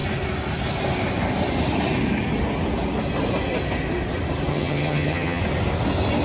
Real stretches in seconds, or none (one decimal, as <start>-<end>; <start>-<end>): 0.0-4.5; 5.4-6.2